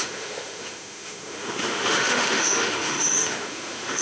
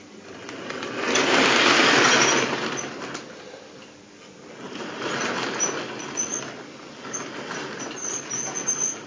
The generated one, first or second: first